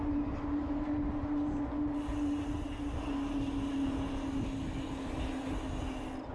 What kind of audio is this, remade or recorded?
recorded